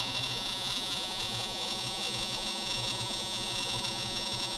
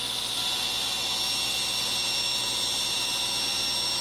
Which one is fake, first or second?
first